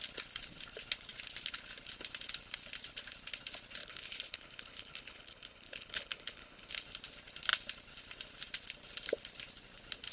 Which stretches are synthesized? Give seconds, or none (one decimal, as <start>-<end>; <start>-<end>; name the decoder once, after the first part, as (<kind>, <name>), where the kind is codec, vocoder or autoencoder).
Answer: 3.8-6.7 (codec, HILCodec)